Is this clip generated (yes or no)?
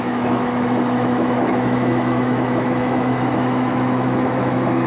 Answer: yes